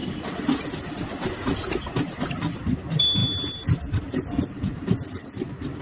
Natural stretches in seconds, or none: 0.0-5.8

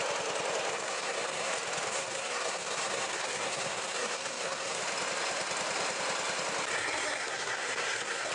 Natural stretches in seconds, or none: 0.0-0.7; 1.5-1.9; 4.8-6.7

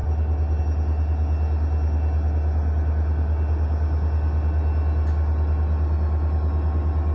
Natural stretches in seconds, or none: 0.0-7.1

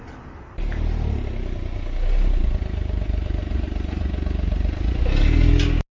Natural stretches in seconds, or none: 0.0-6.0

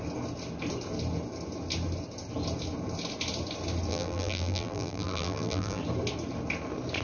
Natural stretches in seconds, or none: 0.0-3.9; 5.8-7.0

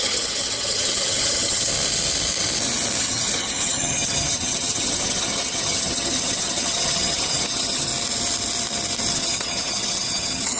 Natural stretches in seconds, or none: 1.7-3.0; 7.9-9.1

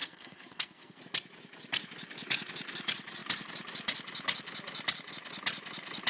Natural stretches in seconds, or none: 1.0-6.1

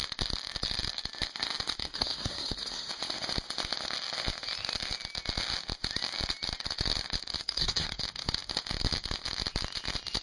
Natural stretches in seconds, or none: 0.0-1.8; 2.9-7.4; 8.0-10.2